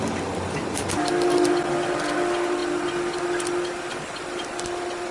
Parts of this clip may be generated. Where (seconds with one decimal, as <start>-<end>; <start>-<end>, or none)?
none